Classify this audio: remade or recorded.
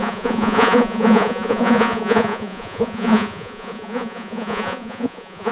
remade